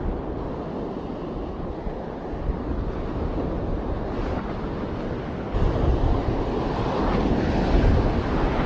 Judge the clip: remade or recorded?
recorded